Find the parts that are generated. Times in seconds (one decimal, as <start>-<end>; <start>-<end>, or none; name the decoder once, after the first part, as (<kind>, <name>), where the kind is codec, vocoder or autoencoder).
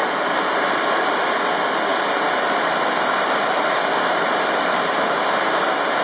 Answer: 1.9-5.2 (vocoder, BigVGAN v2)